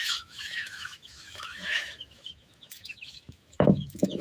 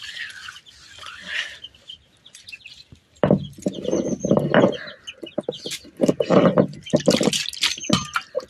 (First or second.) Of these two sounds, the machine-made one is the first